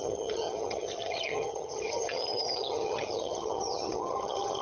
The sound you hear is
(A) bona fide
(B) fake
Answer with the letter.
B